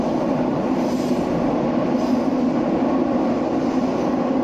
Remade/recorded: recorded